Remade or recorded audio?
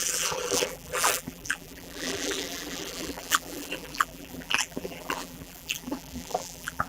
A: remade